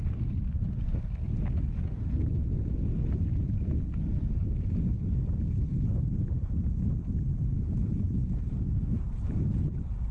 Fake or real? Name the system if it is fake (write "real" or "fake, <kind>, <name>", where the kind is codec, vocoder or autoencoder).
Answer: real